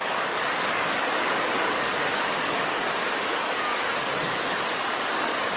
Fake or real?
fake